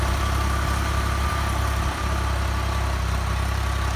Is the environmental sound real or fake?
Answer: real